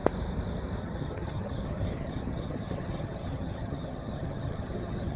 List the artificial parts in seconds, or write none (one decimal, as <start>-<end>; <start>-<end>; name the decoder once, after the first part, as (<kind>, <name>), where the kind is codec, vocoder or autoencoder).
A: 0.8-5.2 (vocoder, HiFi-GAN)

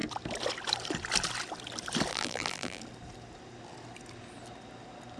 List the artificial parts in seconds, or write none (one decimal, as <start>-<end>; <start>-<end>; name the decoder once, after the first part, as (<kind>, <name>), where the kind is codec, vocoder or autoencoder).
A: 2.1-2.8 (vocoder, BigVGAN v2)

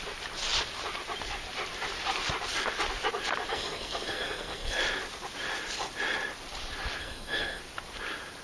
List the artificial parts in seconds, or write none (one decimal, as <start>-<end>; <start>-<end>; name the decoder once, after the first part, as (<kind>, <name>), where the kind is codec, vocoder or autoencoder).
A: 3.5-4.8 (codec, SNAC); 7.0-7.6

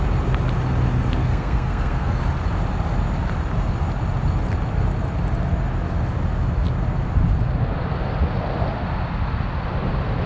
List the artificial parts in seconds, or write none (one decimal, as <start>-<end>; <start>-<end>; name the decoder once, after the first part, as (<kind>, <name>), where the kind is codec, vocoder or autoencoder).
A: 1.2-2.2 (codec, SNAC)

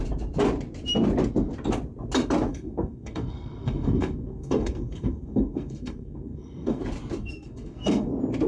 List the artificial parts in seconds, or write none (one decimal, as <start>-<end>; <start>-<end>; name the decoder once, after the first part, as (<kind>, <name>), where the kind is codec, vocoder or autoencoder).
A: 2.5-6.8 (codec, SNAC); 7.2-8.1

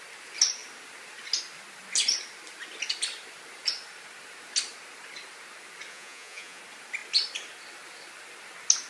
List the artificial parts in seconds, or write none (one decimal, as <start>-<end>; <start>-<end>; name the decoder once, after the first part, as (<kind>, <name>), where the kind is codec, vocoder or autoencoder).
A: 5.9-6.6 (vocoder, Vocos)

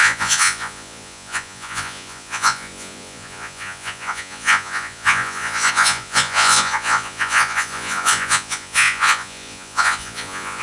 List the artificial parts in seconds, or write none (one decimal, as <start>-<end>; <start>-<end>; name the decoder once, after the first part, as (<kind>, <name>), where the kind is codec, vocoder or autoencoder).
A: 0.0-10.6 (vocoder, Vocos)